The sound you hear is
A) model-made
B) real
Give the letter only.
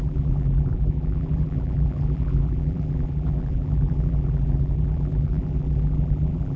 A